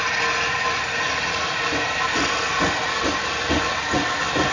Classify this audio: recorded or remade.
recorded